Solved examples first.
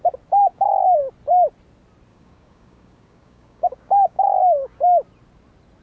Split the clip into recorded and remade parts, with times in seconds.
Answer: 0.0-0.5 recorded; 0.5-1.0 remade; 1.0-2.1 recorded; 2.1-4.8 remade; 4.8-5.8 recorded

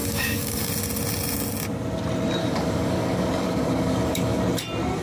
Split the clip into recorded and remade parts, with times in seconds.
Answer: 0.0-0.7 remade; 0.7-2.4 recorded; 2.4-4.4 remade; 4.4-5.0 recorded